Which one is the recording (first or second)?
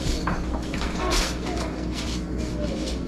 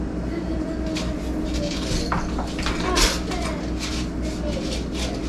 second